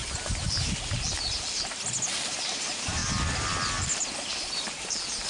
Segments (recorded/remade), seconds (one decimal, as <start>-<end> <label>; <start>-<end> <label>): 0.0-2.4 recorded; 2.4-3.0 remade; 3.0-5.3 recorded